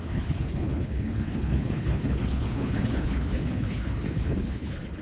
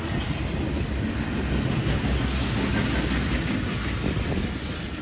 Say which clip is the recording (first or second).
second